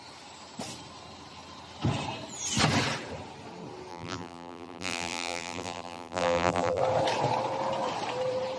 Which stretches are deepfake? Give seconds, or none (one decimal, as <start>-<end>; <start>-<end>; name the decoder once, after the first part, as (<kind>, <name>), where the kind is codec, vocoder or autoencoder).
3.9-6.8 (vocoder, BigVGAN v2)